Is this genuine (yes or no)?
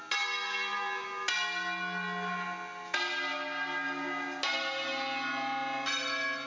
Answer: yes